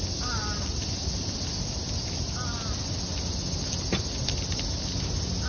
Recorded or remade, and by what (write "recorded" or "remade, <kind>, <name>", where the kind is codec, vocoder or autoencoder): recorded